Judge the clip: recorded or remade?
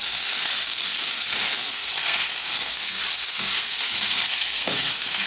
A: remade